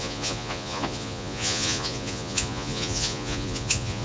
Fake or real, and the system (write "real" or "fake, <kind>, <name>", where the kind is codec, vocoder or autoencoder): fake, vocoder, Vocos